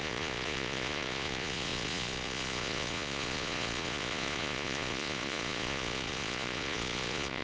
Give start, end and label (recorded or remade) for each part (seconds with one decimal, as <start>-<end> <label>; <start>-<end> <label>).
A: 0.0-7.4 remade